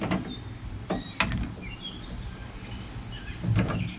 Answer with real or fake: real